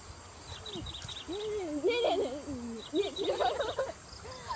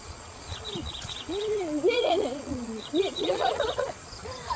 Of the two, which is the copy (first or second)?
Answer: second